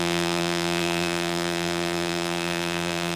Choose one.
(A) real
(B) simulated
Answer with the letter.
B